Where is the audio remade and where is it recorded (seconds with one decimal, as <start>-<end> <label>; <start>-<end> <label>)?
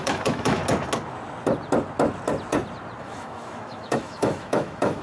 0.0-0.6 remade; 0.6-3.0 recorded; 3.0-5.0 remade